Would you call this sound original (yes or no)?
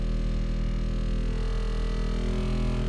yes